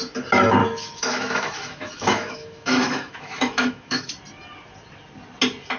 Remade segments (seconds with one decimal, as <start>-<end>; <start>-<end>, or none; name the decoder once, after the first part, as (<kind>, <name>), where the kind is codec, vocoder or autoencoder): 0.6-4.1 (autoencoder, DAC-VAE)